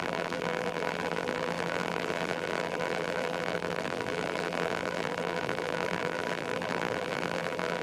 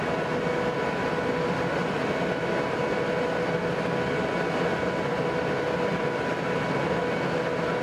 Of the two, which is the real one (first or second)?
second